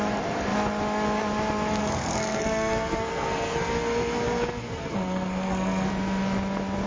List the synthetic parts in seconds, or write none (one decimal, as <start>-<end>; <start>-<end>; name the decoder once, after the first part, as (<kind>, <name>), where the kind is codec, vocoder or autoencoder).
1.8-5.9 (codec, SNAC)